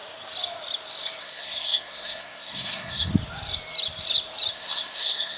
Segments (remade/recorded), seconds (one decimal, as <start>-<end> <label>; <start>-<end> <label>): 0.0-1.2 recorded; 1.2-3.1 remade; 3.1-4.5 recorded; 4.5-5.4 remade